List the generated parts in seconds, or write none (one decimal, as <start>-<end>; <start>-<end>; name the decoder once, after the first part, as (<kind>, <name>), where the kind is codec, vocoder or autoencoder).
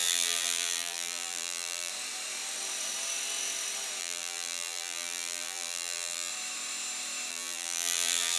0.0-1.9 (vocoder, BigVGAN v2); 4.0-6.3; 7.3-8.4